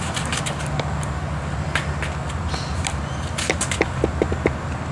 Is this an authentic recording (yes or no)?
yes